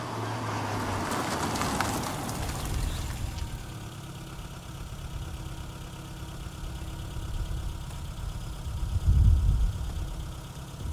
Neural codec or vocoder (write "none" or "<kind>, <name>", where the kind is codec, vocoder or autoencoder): none